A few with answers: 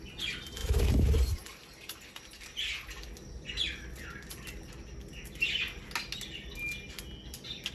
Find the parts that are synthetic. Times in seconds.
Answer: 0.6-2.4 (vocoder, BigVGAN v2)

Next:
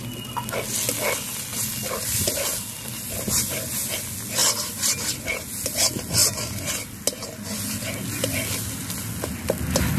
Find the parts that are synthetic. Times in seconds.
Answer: 1.5-2.5 (vocoder, BigVGAN v2); 6.2-6.7

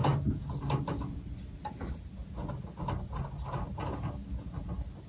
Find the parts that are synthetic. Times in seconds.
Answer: none

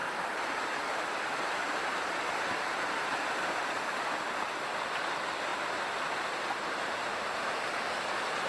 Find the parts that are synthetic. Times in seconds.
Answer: 0.0-3.8 (vocoder, BigVGAN v2); 5.5-7.8

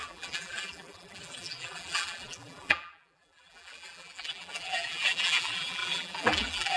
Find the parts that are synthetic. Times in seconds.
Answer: 0.0-6.8 (vocoder, BigVGAN v2)